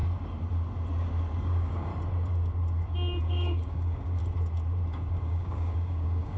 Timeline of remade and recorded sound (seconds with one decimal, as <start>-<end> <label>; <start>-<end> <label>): 0.0-1.4 recorded; 1.4-1.9 remade; 1.9-3.2 recorded; 3.2-4.2 remade; 4.2-5.2 recorded; 5.2-6.4 remade